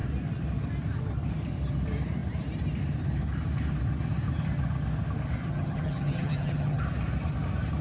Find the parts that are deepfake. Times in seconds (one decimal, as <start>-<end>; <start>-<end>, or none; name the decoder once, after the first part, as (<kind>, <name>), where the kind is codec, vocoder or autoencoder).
5.4-6.8 (vocoder, HiFi-GAN)